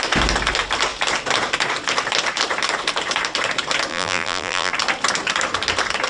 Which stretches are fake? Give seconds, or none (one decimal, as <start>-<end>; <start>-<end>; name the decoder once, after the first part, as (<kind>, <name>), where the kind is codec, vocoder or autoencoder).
3.9-4.7 (vocoder, BigVGAN v2)

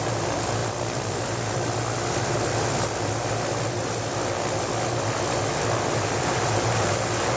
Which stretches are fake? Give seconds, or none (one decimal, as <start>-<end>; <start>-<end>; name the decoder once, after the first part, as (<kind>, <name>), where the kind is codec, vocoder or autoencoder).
none

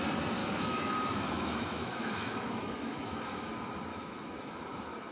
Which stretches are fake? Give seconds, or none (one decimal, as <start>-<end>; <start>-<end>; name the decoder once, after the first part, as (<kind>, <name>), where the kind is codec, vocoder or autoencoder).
0.4-3.5 (autoencoder, DAC-VAE); 3.9-5.1